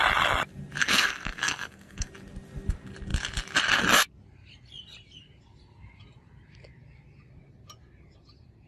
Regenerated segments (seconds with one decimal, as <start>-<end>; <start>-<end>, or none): 0.8-2.1